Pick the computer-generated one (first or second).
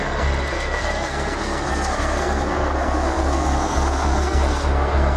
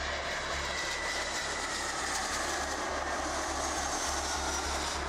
first